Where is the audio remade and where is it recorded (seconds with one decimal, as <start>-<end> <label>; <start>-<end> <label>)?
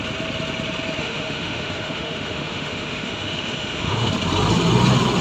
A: 0.0-1.0 recorded; 1.0-4.1 remade; 4.1-5.2 recorded